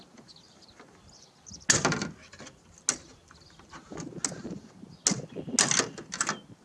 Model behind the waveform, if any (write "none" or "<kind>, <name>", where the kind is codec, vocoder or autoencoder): none